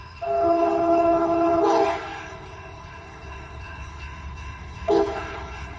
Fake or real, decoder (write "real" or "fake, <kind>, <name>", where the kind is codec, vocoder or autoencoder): fake, codec, HILCodec